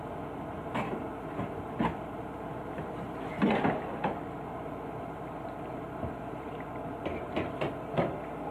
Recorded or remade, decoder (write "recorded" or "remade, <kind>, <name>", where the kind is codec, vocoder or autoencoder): recorded